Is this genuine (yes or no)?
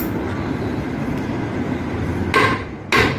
yes